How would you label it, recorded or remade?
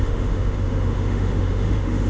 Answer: remade